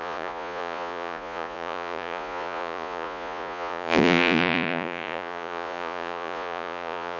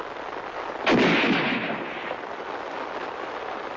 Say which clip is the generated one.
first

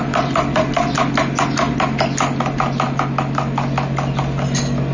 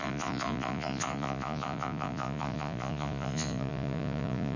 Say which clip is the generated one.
second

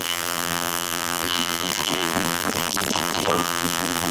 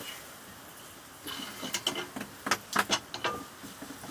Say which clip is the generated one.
first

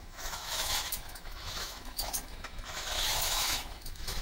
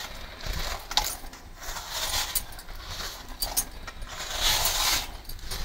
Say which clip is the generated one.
first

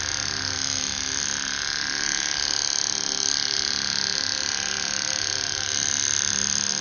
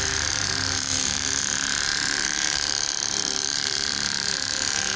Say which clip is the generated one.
second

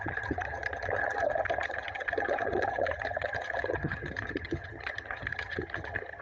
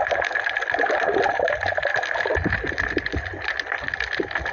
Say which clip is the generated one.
first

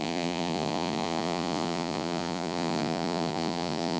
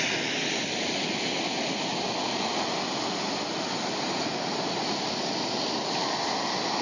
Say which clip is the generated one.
first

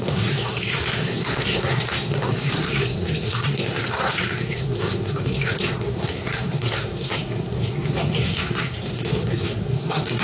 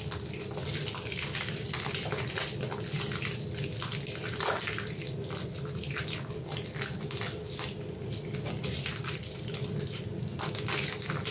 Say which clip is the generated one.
first